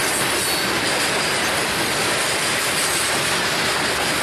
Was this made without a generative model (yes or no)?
yes